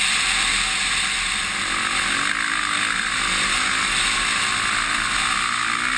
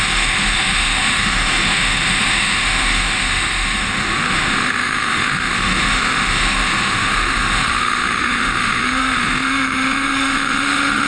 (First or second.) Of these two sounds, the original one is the first